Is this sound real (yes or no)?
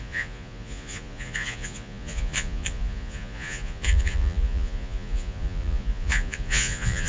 no